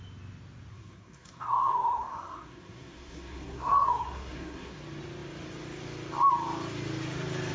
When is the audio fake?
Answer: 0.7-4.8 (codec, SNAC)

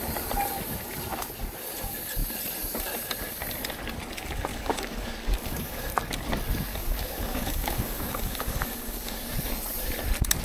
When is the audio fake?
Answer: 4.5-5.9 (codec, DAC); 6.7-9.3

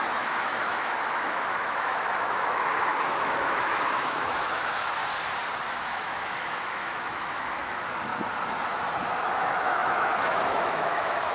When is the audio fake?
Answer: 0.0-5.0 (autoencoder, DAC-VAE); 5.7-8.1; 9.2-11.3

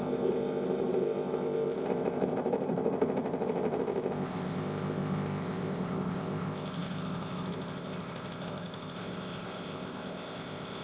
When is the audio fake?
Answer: 0.0-10.8 (codec, ZipCodec)

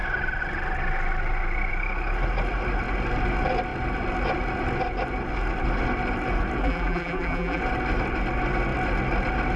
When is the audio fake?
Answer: 6.6-7.6 (vocoder, BigVGAN v2)

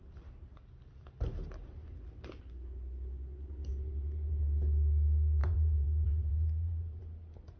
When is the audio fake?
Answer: 3.7-4.4 (vocoder, BigVGAN v2); 5.4-7.0